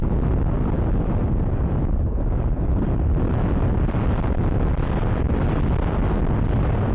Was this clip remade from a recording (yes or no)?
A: no